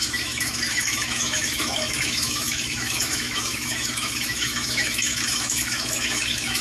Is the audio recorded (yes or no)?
no